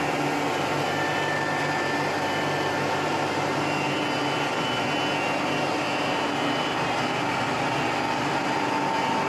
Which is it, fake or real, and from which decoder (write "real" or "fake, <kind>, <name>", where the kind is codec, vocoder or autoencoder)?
real